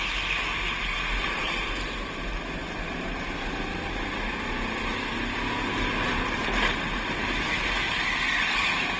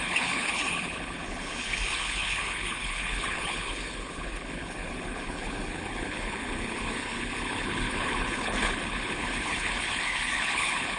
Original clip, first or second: first